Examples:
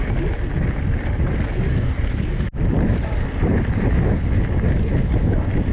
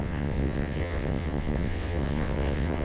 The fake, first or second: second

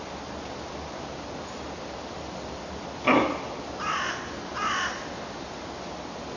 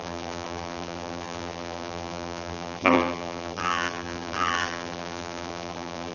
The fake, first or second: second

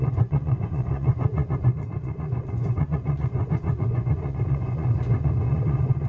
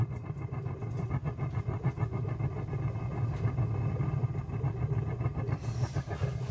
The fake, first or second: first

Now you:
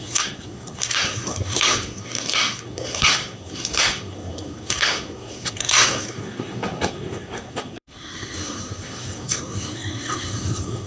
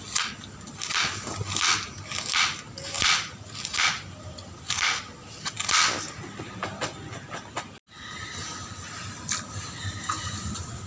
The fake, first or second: first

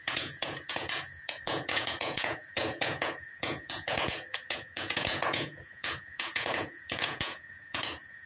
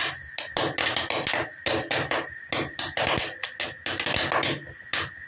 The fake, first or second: first